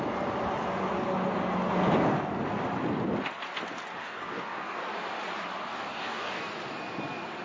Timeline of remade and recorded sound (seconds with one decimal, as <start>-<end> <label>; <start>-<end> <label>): 0.0-4.0 recorded; 4.0-4.8 remade; 4.8-5.7 recorded; 5.7-6.4 remade; 6.4-7.4 recorded